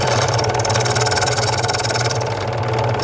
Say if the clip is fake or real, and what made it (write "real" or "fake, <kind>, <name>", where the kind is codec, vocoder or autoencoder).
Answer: fake, vocoder, BigVGAN v2